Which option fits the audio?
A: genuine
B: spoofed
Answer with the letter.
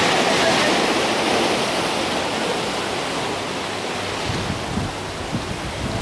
A